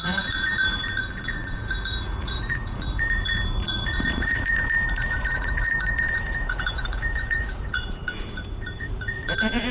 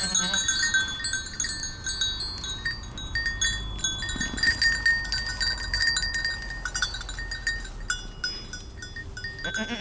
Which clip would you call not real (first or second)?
first